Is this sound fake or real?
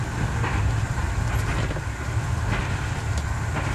real